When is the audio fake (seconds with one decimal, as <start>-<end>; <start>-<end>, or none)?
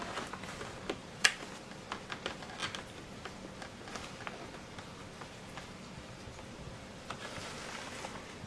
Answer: none